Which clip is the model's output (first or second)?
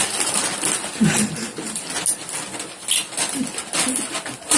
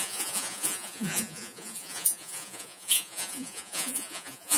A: second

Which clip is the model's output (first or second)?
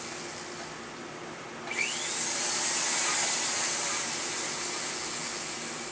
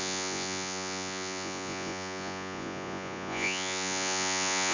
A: second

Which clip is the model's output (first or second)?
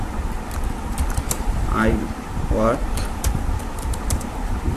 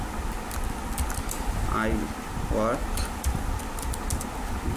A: first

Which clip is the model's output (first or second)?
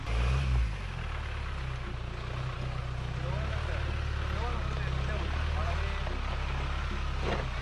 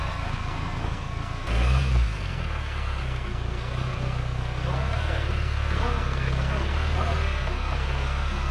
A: second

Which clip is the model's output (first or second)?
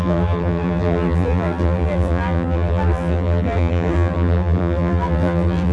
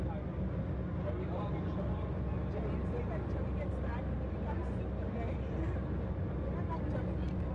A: first